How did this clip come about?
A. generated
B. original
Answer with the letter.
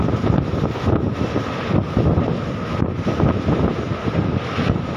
B